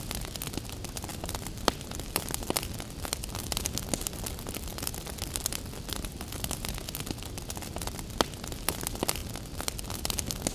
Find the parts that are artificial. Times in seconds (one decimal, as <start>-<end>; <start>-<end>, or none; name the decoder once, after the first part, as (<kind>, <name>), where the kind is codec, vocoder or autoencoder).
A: 1.1-3.5 (vocoder, BigVGAN v2); 4.7-6.7

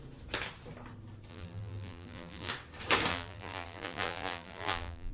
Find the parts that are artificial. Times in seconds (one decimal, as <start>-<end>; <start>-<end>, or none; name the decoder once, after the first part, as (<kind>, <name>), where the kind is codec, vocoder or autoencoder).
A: 1.3-2.5 (vocoder, BigVGAN v2); 3.1-5.1

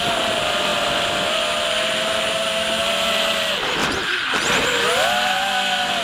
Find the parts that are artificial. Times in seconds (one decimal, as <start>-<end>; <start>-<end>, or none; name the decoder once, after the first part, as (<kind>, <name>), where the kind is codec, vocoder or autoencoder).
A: 0.7-1.3 (vocoder, BigVGAN v2); 3.8-4.6

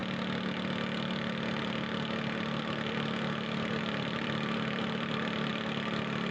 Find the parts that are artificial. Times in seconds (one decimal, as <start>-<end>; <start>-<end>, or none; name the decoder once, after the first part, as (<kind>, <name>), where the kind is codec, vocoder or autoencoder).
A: 3.8-5.5 (vocoder, BigVGAN v2)